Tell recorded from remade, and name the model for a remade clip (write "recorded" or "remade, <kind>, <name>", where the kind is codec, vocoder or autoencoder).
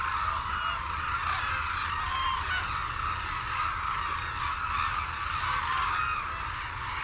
recorded